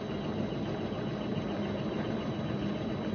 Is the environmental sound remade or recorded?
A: recorded